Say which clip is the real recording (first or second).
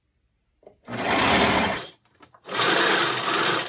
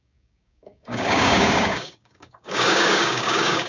first